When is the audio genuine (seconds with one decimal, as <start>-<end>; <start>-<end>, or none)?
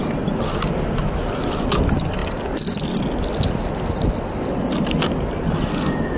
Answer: 0.0-6.2